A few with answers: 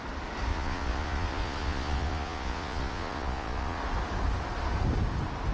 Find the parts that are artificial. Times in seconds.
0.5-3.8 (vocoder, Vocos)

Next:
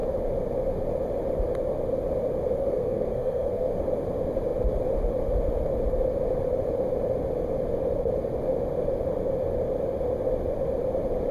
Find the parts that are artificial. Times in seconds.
2.6-3.7 (codec, SNAC)

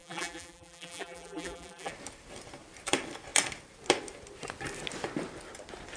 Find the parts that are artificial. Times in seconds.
0.0-1.9 (vocoder, BigVGAN v2)